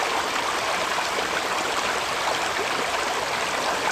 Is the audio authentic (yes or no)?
no